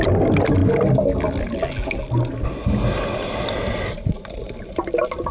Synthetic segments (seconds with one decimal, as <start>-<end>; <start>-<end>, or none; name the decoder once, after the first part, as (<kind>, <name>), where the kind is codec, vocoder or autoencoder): none